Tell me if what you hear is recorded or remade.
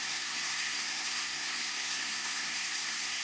remade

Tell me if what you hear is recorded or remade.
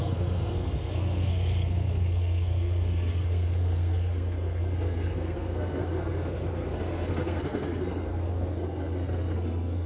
remade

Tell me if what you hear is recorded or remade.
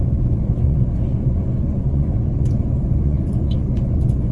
remade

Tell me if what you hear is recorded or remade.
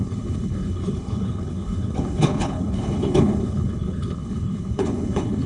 remade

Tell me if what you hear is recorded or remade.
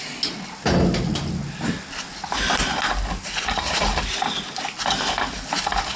recorded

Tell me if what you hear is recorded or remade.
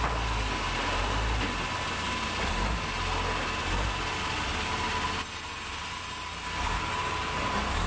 recorded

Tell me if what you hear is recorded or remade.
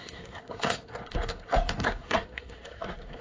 remade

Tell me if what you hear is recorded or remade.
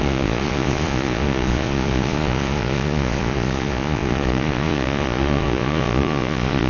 remade